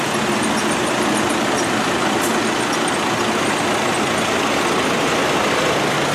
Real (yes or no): yes